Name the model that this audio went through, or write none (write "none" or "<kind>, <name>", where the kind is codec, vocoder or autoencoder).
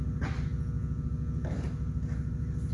none